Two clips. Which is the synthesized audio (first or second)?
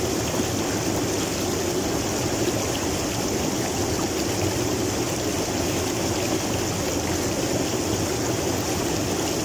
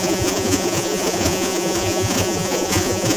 second